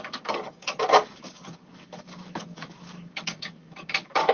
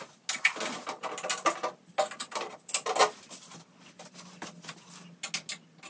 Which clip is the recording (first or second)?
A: second